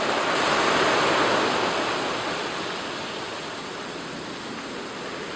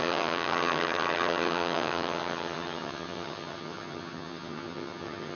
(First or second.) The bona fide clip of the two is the first